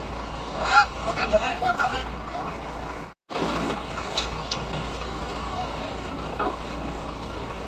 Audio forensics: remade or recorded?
remade